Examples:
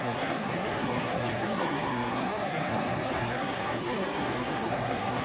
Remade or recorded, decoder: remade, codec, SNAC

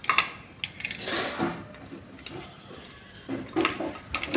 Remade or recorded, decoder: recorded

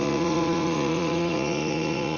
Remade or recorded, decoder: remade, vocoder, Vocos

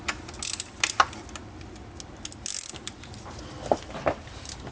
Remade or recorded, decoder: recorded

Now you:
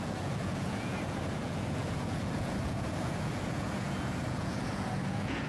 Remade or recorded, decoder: remade, vocoder, Vocos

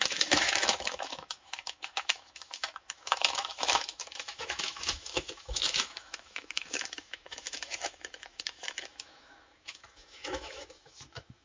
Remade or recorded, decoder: remade, autoencoder, DAC-VAE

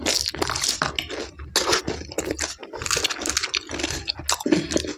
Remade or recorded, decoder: recorded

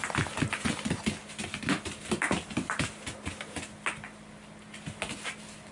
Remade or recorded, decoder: recorded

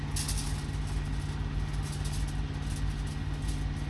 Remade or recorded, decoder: recorded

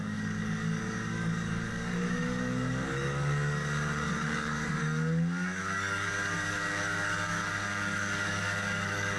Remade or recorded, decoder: remade, codec, DAC